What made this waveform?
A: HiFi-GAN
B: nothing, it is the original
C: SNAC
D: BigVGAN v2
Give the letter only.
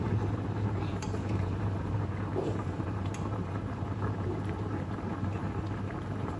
D